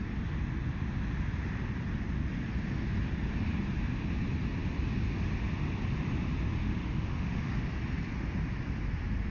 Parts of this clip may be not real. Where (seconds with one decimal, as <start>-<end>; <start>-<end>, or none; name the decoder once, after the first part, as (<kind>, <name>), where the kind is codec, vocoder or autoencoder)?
6.6-7.5 (autoencoder, DAC-VAE)

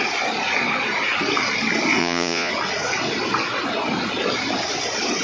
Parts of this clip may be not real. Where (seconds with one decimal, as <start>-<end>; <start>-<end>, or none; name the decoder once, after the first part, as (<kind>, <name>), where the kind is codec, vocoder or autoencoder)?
2.0-2.5 (vocoder, Vocos)

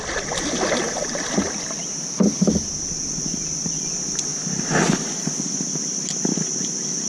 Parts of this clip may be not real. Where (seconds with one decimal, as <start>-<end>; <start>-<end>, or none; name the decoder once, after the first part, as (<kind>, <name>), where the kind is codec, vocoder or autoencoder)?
none

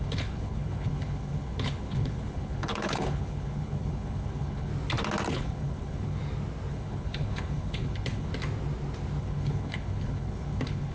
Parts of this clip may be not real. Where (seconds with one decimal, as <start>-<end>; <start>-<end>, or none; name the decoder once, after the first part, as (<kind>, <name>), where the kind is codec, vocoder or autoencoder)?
0.0-4.7 (codec, HILCodec); 5.3-6.2; 6.7-8.3; 9.2-10.9

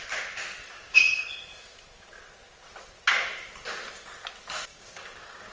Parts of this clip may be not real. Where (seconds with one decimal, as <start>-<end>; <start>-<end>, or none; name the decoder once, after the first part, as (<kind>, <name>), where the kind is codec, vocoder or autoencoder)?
0.6-1.2 (codec, DAC); 4.7-5.5